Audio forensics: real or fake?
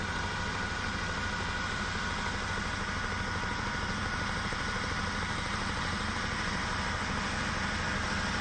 real